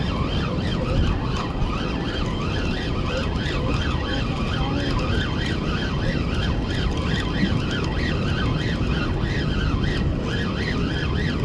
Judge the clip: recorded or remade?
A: recorded